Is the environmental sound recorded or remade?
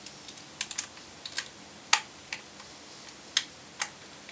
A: recorded